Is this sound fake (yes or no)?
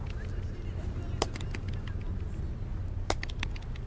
no